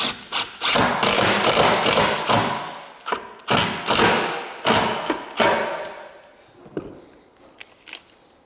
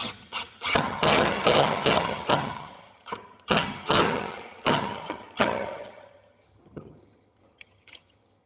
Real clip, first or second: first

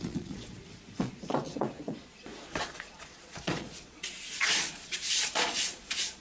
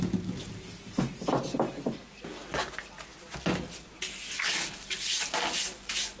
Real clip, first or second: second